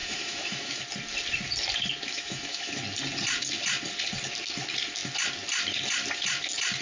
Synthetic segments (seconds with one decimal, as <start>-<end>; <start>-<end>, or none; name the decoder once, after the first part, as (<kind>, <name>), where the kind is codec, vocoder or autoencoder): 0.0-0.8 (autoencoder, DAC-VAE); 2.1-2.7